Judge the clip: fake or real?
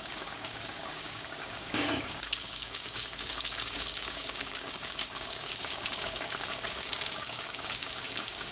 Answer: fake